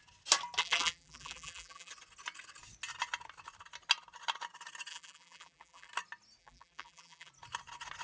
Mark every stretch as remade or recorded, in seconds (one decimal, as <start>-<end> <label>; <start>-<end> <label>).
0.0-0.6 recorded; 0.6-1.9 remade; 1.9-4.9 recorded; 4.9-5.9 remade; 5.9-6.4 recorded; 6.4-7.3 remade; 7.3-8.0 recorded